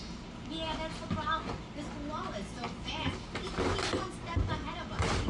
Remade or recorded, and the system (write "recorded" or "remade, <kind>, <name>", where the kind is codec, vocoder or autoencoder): recorded